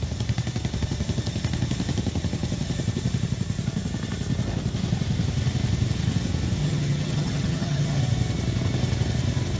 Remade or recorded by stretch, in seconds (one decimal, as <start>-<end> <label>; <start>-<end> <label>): 0.0-6.6 recorded; 6.6-8.0 remade; 8.0-9.6 recorded

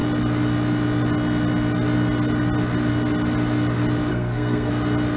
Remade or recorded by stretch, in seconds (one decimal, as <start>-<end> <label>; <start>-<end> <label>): 0.0-4.1 recorded; 4.1-4.7 remade; 4.7-5.2 recorded

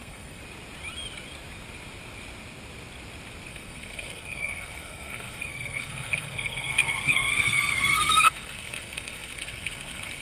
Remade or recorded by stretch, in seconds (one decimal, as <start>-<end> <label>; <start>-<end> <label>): 0.0-0.4 remade; 0.4-3.5 recorded; 3.5-10.2 remade